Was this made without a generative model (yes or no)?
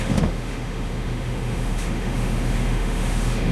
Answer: no